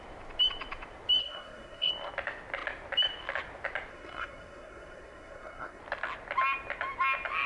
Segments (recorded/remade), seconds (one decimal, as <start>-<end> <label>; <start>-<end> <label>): 0.0-1.2 recorded; 1.2-1.9 remade; 1.9-3.9 recorded; 3.9-5.8 remade; 5.8-7.5 recorded